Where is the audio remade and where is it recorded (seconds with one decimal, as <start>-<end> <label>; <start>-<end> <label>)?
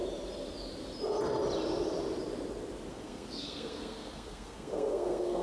0.0-2.9 recorded; 2.9-5.4 remade